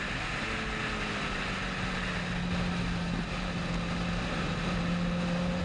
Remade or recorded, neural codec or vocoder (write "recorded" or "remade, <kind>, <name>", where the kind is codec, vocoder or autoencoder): recorded